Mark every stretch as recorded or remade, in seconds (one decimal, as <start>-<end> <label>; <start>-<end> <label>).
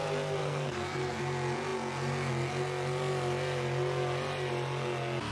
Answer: 0.0-0.4 recorded; 0.4-1.2 remade; 1.2-5.3 recorded